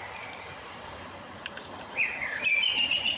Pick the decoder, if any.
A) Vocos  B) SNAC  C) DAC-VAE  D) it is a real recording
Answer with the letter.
D